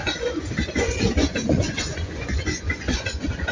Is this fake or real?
fake